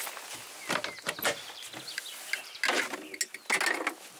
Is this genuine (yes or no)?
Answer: yes